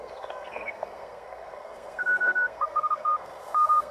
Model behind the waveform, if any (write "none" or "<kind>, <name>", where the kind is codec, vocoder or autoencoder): codec, SNAC